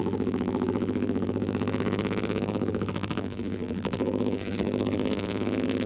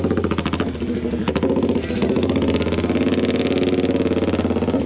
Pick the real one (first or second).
second